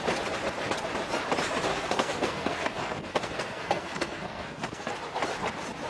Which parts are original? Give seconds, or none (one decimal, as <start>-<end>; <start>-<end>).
0.0-1.7; 4.9-5.9